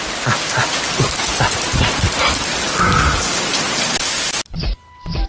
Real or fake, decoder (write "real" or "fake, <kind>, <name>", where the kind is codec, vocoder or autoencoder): real